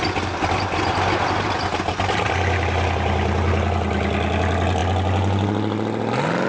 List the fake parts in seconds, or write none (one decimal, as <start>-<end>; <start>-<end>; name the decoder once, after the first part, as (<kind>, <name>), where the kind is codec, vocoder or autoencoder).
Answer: none